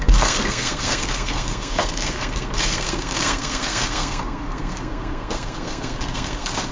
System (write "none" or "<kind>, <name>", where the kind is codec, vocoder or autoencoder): codec, SNAC